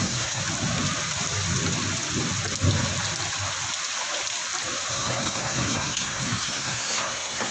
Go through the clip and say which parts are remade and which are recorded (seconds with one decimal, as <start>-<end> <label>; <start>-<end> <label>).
0.0-0.4 remade; 0.4-4.9 recorded; 4.9-7.5 remade